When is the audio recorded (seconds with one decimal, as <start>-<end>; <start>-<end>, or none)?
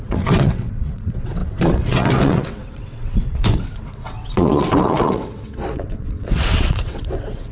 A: none